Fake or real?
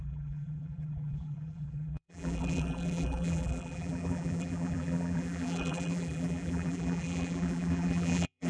fake